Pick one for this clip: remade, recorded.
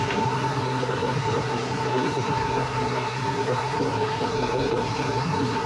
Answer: remade